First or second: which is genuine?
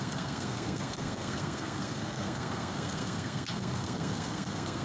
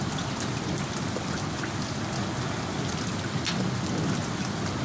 second